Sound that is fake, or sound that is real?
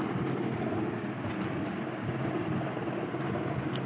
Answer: real